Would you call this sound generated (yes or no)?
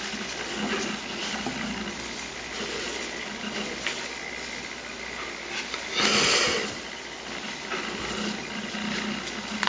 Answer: no